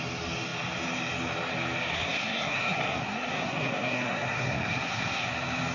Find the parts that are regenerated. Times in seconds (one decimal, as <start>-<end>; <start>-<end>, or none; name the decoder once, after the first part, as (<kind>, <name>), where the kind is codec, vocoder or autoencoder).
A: 1.9-5.3 (codec, SNAC)